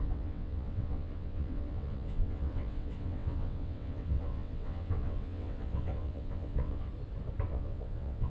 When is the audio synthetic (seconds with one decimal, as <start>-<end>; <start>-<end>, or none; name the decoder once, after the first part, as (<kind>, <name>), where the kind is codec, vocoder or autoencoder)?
0.0-6.9 (vocoder, WaveNeXt); 7.5-8.3